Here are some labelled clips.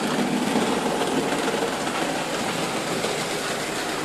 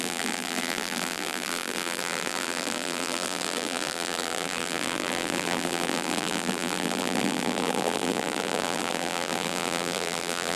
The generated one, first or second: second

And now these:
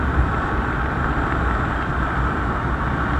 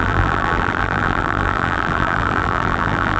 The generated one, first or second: second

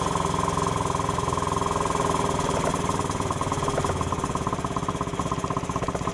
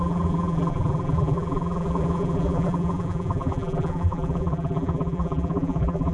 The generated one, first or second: second